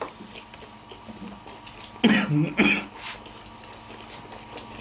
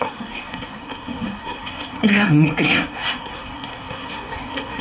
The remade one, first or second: second